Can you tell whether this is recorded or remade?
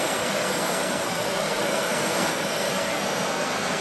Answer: remade